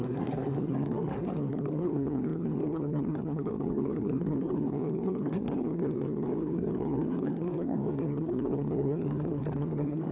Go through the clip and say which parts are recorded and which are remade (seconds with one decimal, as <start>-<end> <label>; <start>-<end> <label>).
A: 0.0-10.1 remade